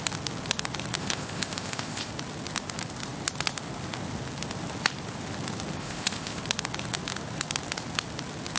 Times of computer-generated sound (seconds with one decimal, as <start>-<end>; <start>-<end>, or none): 1.0-2.1; 5.8-6.4